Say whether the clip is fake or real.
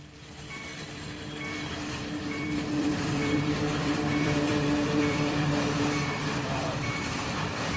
fake